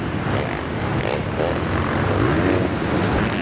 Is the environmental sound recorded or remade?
recorded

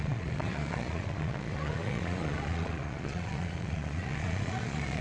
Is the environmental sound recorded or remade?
remade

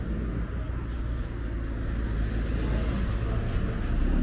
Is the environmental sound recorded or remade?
recorded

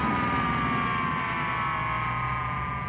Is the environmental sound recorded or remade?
recorded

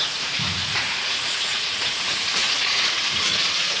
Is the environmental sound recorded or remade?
remade